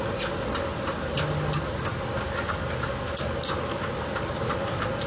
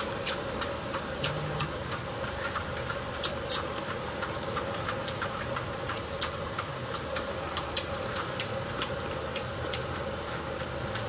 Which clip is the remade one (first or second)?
second